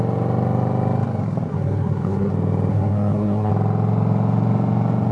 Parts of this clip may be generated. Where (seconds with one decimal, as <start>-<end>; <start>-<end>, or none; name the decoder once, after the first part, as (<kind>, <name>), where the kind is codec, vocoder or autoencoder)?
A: 1.5-2.3 (codec, SNAC); 2.7-3.5